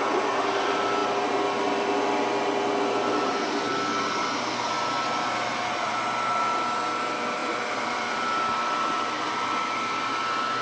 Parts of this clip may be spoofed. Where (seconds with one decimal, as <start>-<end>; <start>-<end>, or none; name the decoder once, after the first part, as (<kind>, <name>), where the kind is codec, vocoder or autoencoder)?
7.4-9.5 (vocoder, BigVGAN v2)

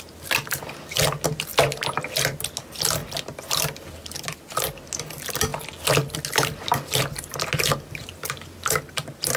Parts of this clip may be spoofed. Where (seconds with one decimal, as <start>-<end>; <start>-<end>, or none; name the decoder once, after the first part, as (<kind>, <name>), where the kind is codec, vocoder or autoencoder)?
none

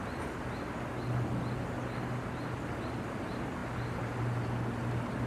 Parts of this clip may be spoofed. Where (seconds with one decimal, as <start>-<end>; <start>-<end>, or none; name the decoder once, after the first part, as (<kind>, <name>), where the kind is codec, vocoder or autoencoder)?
none